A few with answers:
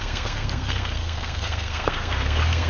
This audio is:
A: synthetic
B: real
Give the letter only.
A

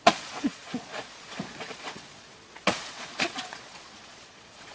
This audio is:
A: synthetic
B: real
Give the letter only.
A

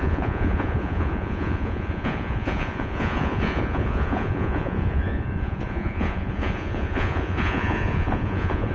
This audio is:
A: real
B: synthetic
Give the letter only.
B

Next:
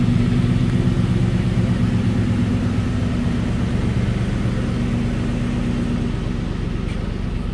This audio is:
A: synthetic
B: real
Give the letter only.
B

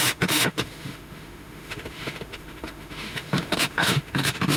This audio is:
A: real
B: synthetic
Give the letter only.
B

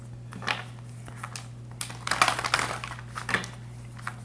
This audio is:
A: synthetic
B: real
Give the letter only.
B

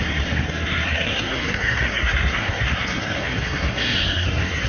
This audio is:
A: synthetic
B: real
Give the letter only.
A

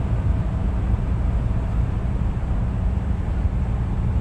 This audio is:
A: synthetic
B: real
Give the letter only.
A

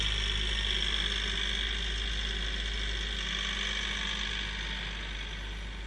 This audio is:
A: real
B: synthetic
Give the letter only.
A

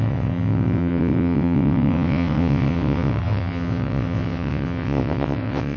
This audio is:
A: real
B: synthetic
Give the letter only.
B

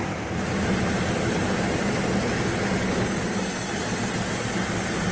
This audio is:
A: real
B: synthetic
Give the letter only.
A